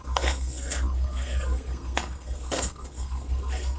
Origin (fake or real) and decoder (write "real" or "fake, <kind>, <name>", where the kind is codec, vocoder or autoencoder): fake, codec, SNAC